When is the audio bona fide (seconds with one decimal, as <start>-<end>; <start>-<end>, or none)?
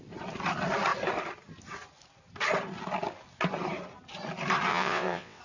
0.0-4.7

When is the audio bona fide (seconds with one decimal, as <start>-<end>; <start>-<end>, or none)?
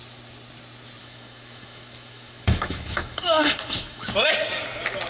0.0-1.0; 4.1-5.1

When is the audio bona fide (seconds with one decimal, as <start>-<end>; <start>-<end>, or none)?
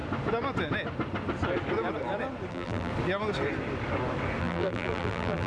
0.0-2.5; 2.9-4.4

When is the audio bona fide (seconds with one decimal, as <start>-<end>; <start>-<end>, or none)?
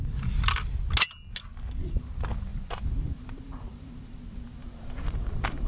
0.0-2.5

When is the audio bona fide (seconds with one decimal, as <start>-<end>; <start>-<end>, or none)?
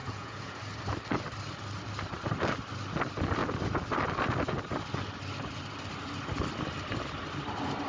0.6-7.9